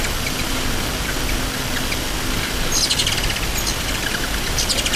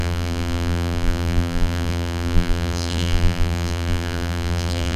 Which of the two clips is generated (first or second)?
second